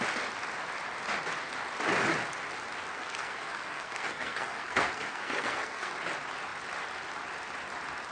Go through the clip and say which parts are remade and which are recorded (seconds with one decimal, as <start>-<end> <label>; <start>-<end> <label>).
0.0-2.9 recorded; 2.9-5.9 remade; 5.9-8.1 recorded